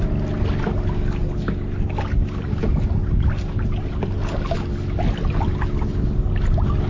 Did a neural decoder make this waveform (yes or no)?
no